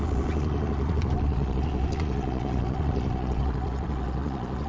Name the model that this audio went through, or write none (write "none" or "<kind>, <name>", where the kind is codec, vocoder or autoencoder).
vocoder, Vocos